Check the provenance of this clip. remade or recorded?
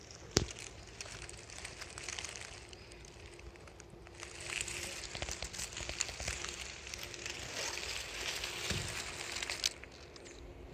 recorded